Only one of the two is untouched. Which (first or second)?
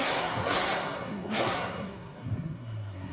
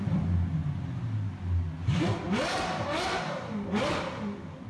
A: second